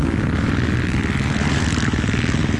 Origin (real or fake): real